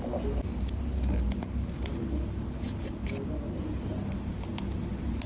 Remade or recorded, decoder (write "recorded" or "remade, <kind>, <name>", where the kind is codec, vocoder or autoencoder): recorded